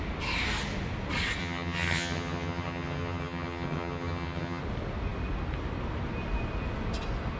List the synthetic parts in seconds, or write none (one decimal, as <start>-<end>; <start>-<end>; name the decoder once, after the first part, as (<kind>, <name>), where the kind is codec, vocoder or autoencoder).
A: 1.4-4.6 (vocoder, HiFi-GAN)